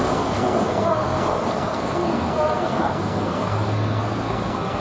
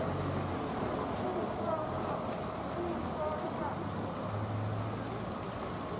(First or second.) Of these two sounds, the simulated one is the first